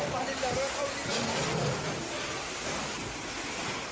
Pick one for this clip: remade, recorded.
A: recorded